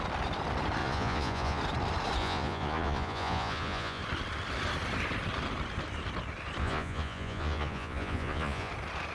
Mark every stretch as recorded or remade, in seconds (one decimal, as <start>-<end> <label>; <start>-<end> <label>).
0.0-0.8 recorded; 0.8-1.6 remade; 1.6-2.2 recorded; 2.2-4.0 remade; 4.0-6.6 recorded; 6.6-8.7 remade; 8.7-9.1 recorded